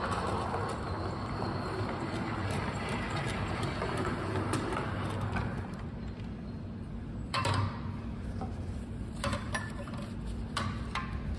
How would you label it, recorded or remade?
remade